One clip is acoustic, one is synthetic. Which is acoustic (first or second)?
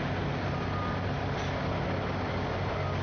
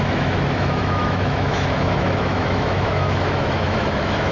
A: first